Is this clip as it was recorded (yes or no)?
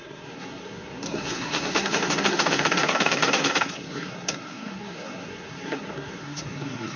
no